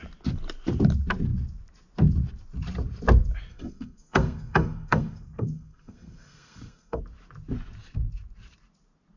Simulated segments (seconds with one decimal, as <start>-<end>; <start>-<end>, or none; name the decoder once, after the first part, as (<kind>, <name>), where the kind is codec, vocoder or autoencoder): 3.5-7.0 (codec, SNAC)